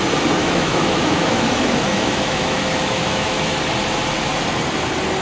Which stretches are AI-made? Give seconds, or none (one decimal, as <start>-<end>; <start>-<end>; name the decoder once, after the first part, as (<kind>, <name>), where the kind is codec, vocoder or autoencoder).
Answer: 0.4-3.5 (autoencoder, DAC-VAE)